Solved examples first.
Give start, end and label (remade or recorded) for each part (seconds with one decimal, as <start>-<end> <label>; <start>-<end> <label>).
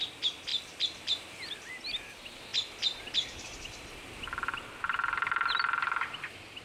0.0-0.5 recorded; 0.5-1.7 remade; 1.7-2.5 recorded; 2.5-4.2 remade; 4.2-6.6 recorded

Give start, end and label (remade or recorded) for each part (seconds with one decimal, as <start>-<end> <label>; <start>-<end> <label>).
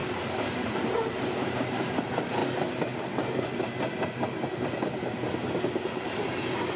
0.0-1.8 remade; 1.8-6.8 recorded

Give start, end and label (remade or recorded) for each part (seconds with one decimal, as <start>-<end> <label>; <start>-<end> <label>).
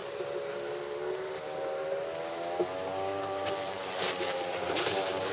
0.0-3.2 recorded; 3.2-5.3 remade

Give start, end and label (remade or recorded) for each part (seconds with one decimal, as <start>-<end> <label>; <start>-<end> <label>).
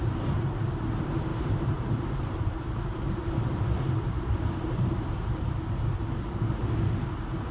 0.0-1.3 recorded; 1.3-5.8 remade; 5.8-7.5 recorded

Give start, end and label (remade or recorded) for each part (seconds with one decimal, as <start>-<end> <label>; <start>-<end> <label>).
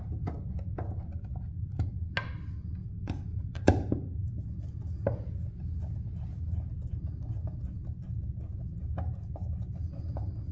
0.0-2.8 recorded; 2.8-4.3 remade; 4.3-10.5 recorded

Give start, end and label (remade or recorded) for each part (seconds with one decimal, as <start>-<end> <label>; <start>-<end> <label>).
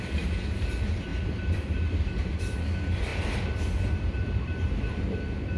0.0-1.1 recorded; 1.1-2.1 remade; 2.1-3.1 recorded; 3.1-5.0 remade; 5.0-5.6 recorded